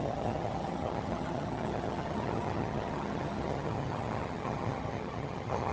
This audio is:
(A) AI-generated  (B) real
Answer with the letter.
A